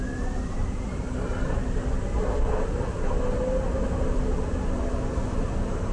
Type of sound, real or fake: real